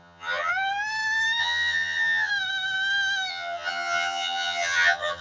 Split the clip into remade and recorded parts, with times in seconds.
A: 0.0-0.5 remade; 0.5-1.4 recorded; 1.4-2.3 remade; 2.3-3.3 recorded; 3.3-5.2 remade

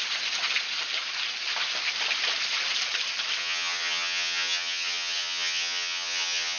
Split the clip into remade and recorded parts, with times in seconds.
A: 0.0-3.4 recorded; 3.4-6.6 remade

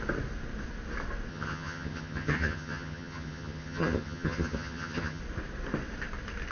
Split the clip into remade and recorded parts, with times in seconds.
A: 0.0-1.3 recorded; 1.3-5.2 remade; 5.2-6.5 recorded

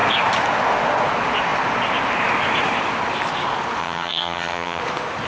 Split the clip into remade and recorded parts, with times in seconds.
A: 0.0-3.8 recorded; 3.8-4.8 remade; 4.8-5.3 recorded

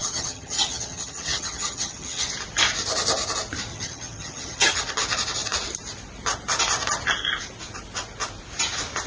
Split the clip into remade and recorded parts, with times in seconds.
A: 0.0-2.3 remade; 2.3-3.7 recorded; 3.7-4.8 remade; 4.8-9.1 recorded

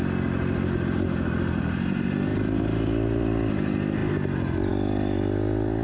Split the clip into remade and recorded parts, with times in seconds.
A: 0.0-5.8 recorded